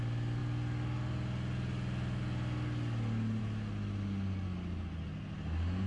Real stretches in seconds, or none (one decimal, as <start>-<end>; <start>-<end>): 0.0-5.9